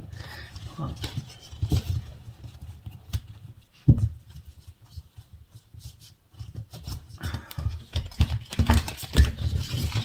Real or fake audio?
fake